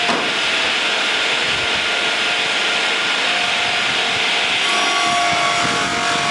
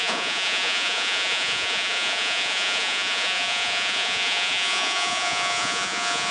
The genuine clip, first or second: first